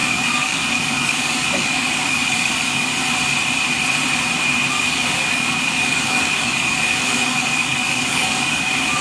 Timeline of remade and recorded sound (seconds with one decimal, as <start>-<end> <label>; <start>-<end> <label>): 0.0-2.9 remade; 2.9-4.7 recorded; 4.7-9.0 remade